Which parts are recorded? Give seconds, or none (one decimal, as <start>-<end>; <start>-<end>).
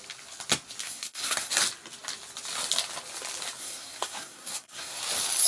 0.0-0.8; 1.5-3.6; 5.0-5.5